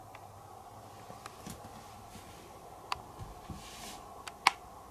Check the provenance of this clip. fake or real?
real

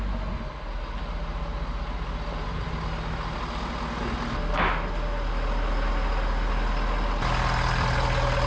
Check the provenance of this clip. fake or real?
real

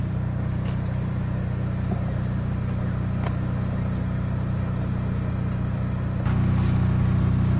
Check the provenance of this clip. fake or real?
real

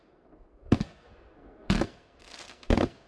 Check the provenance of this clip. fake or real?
fake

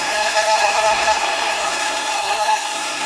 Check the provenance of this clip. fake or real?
fake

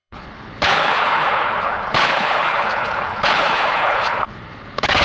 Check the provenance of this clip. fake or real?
fake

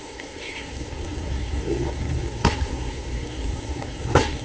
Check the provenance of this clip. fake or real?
fake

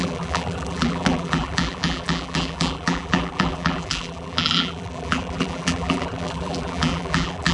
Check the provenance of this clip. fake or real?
fake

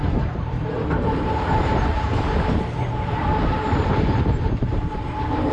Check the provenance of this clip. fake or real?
fake